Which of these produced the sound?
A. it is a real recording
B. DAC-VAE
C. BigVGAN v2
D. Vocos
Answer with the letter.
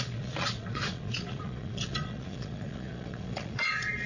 D